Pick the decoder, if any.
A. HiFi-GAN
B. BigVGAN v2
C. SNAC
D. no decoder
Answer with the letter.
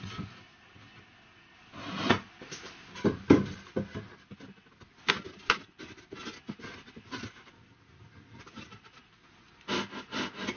D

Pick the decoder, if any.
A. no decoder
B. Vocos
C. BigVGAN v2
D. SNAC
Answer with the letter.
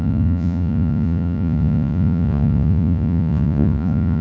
B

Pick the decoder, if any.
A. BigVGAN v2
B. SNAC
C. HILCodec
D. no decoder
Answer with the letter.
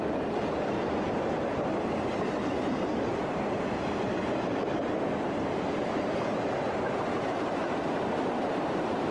A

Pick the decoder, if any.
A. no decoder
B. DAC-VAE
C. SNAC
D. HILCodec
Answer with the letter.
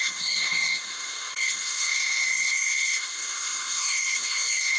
C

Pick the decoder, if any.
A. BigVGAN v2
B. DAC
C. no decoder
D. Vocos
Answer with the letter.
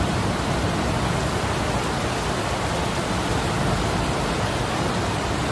C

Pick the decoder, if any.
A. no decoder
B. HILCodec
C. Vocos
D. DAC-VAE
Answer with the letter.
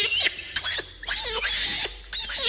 A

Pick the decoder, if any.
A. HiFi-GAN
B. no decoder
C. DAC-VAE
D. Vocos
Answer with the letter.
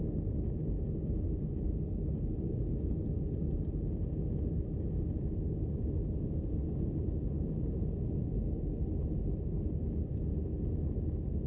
B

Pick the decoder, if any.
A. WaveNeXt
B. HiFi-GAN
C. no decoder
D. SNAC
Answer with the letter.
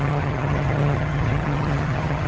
B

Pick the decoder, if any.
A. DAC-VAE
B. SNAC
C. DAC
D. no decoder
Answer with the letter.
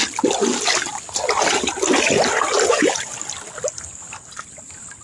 D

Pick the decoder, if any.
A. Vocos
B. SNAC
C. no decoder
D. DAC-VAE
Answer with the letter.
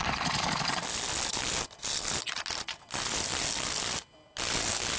C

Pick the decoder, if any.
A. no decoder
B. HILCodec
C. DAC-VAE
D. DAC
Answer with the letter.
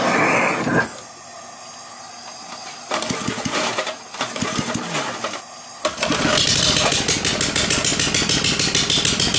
A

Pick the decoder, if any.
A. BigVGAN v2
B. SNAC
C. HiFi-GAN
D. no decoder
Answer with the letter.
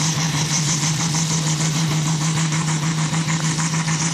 A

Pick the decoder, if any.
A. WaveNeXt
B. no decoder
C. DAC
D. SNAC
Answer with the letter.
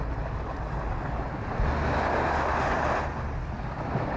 B